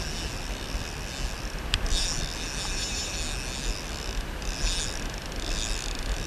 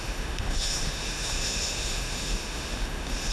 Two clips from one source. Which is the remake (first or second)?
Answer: second